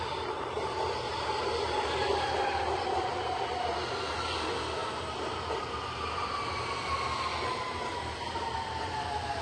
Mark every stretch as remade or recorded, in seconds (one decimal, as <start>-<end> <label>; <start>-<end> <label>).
0.0-9.4 recorded